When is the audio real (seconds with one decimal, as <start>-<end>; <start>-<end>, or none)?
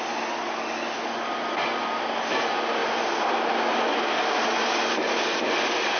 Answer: 0.0-6.0